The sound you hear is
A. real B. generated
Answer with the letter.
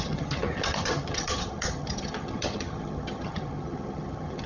B